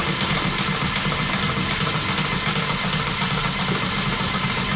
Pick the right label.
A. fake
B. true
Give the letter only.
B